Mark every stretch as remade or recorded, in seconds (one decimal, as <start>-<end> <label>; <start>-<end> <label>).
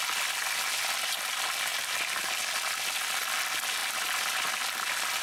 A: 0.0-5.2 recorded